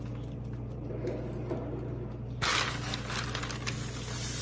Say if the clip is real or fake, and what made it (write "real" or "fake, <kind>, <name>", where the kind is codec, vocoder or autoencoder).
real